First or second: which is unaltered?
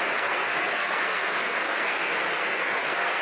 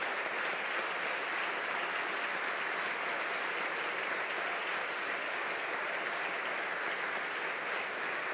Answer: second